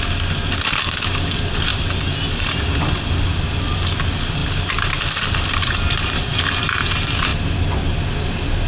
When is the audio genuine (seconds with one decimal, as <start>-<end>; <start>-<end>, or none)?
0.0-8.7